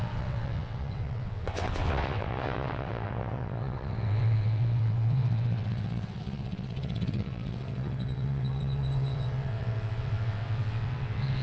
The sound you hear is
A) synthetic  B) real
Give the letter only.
A